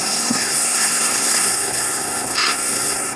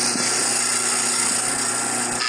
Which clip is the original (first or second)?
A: second